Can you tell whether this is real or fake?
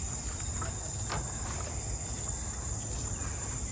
real